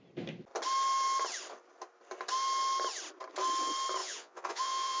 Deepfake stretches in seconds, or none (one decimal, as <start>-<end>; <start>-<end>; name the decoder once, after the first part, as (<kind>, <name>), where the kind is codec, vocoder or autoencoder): 4.0-5.0 (vocoder, Vocos)

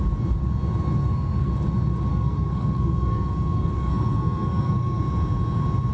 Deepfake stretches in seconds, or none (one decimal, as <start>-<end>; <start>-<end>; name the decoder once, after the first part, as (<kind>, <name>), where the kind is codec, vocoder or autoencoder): 1.0-1.5 (codec, SNAC); 2.1-5.0

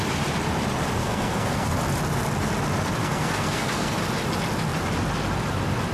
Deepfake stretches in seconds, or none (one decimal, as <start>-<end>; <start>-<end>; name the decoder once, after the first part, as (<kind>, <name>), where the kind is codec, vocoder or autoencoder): 1.0-1.7 (codec, SNAC); 3.0-4.0

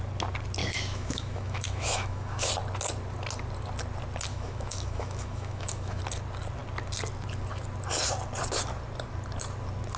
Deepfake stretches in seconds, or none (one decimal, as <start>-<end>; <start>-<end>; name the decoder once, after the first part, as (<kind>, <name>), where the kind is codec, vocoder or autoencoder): 0.6-2.5 (autoencoder, DAC-VAE); 4.3-6.0

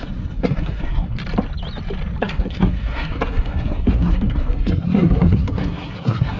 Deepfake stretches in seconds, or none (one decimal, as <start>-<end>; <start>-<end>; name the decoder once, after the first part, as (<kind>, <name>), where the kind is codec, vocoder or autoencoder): 0.0-1.2 (codec, SNAC); 2.2-6.4